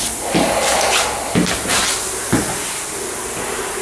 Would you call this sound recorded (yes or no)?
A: yes